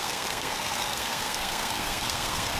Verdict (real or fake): fake